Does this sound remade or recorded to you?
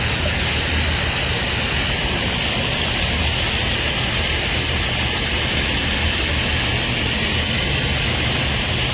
recorded